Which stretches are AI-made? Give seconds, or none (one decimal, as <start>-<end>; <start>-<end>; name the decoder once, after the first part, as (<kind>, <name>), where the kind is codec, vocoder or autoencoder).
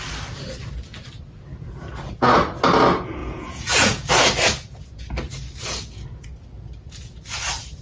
3.2-4.1 (vocoder, Vocos)